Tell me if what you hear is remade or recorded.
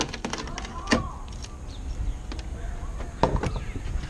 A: recorded